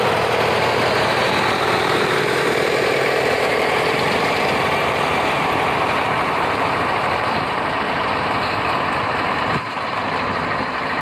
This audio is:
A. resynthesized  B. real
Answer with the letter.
A